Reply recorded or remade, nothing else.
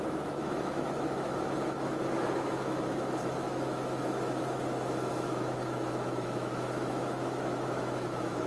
remade